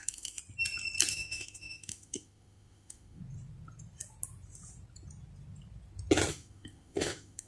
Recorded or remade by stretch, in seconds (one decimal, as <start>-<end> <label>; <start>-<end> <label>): 0.0-0.4 remade; 0.4-1.1 recorded; 1.1-3.2 remade; 3.2-6.3 recorded; 6.3-7.5 remade